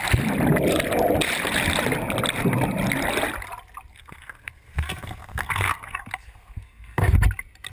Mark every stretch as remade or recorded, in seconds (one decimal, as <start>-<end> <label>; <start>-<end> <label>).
0.0-3.9 recorded; 3.9-7.1 remade; 7.1-7.7 recorded